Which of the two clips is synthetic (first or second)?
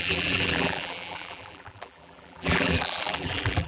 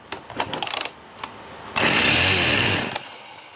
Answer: first